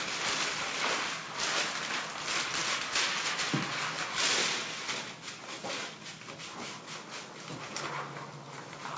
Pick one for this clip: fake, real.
real